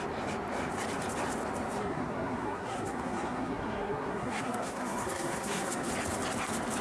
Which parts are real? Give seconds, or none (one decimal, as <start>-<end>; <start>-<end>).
0.0-1.8; 5.9-6.8